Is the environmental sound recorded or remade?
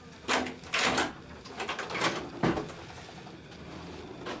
recorded